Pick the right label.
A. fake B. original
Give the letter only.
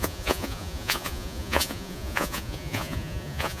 A